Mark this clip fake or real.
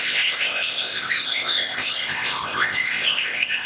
fake